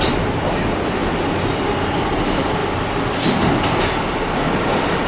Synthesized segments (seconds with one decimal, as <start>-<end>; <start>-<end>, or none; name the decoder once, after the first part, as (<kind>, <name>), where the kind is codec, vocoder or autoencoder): 0.0-1.0 (vocoder, BigVGAN v2); 1.9-2.6; 4.6-5.1